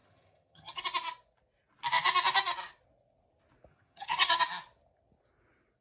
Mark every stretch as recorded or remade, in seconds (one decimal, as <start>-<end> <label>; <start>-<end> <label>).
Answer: 0.0-0.8 remade; 0.8-3.7 recorded; 3.7-4.4 remade; 4.4-5.8 recorded